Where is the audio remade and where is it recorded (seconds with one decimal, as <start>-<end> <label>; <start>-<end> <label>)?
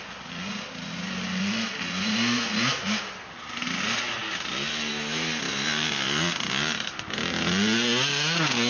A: 0.0-8.7 recorded